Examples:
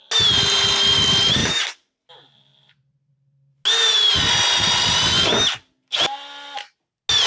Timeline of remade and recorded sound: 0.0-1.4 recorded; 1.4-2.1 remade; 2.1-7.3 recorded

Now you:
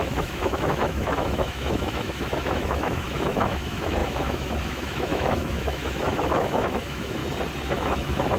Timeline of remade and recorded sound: 0.0-7.2 remade; 7.2-7.7 recorded; 7.7-8.4 remade

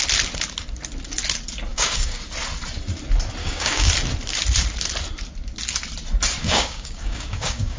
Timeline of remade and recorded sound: 0.0-1.7 recorded; 1.7-2.2 remade; 2.2-3.4 recorded; 3.4-3.9 remade; 3.9-6.4 recorded; 6.4-7.8 remade

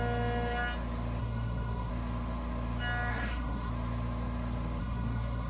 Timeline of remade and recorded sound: 0.0-1.2 recorded; 1.2-1.9 remade; 1.9-3.1 recorded; 3.1-3.7 remade; 3.7-4.8 recorded; 4.8-5.5 remade